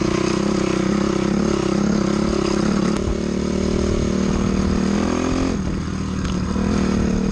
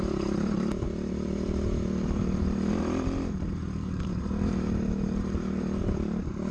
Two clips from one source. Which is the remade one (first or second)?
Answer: second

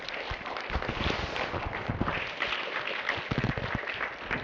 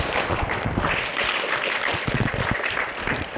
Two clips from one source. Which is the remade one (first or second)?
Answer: second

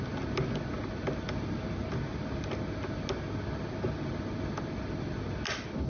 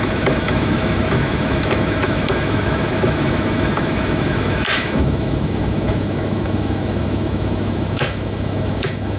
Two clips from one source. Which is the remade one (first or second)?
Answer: second